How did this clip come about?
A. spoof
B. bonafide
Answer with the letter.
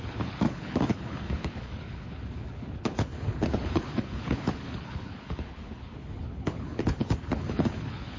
A